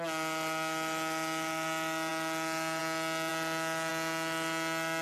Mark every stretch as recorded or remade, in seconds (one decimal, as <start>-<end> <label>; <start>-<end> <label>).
0.0-5.0 recorded